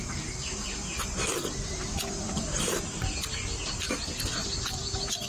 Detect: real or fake real